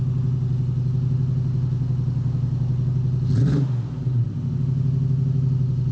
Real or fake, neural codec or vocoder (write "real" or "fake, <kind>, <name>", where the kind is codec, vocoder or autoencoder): real